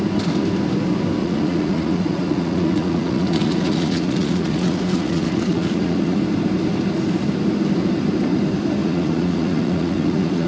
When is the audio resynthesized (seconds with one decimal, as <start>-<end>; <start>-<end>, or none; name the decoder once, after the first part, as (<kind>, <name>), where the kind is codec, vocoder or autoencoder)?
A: 1.2-6.2 (vocoder, Vocos); 8.8-10.5